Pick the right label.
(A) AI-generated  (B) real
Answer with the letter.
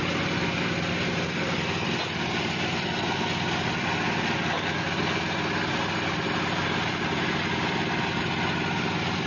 B